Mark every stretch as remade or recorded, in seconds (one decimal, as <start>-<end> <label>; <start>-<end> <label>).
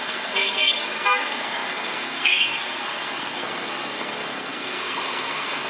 0.0-5.7 remade